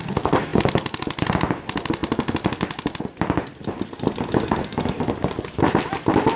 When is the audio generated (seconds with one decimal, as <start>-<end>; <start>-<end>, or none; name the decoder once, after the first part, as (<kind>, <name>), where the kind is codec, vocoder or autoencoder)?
none